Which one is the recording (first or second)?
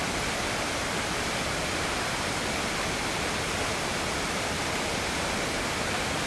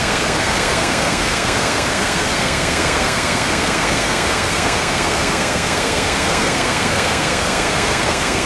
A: first